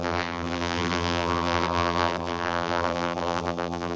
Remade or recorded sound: remade